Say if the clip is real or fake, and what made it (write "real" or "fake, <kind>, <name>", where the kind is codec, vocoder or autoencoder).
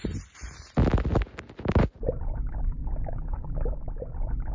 real